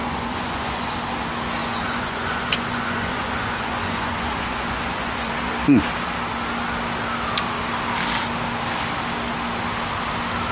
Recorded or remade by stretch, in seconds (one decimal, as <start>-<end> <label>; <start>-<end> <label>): 0.0-0.9 remade; 0.9-1.6 recorded; 1.6-5.3 remade; 5.3-10.5 recorded